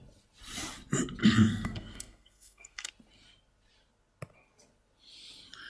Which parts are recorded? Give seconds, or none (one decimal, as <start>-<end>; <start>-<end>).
0.0-1.2; 2.9-5.7